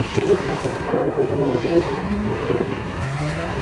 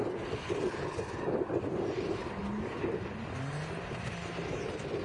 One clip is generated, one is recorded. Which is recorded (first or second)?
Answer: second